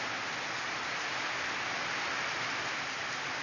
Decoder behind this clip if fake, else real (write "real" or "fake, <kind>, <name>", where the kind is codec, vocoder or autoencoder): real